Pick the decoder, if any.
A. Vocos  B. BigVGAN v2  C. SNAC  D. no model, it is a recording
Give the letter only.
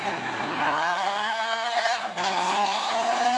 C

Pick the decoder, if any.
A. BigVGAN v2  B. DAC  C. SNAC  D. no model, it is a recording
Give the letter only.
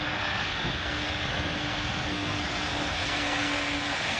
C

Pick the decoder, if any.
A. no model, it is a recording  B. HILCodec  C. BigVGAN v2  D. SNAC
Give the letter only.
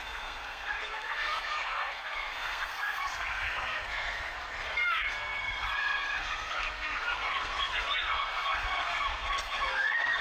D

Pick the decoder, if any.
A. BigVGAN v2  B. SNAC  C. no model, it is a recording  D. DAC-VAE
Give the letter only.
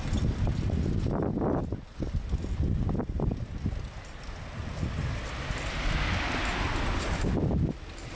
C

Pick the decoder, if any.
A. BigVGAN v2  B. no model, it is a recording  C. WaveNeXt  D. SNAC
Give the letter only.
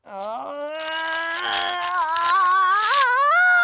B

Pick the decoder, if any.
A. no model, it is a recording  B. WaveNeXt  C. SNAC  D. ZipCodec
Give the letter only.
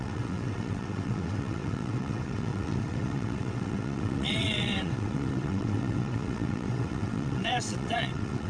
B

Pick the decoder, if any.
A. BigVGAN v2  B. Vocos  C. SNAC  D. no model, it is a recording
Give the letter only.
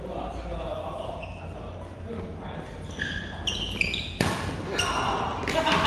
D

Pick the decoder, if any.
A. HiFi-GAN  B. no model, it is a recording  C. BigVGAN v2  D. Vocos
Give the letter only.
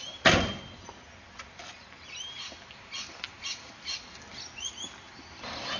B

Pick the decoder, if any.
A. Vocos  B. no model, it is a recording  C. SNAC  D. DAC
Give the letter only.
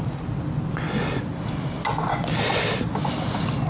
B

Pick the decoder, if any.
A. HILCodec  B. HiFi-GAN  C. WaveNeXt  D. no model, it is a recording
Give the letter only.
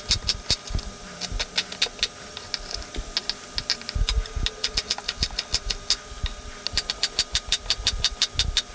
D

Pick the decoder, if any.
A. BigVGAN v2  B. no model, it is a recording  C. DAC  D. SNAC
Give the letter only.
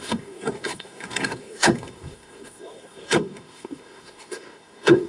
D